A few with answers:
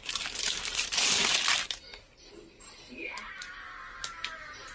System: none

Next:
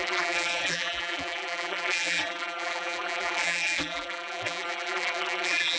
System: vocoder, BigVGAN v2